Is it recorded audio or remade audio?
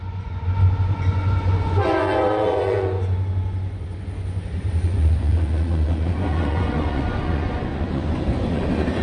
remade